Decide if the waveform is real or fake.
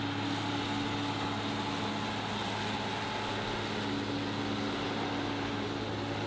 real